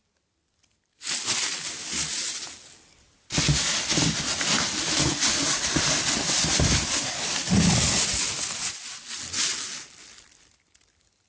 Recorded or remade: recorded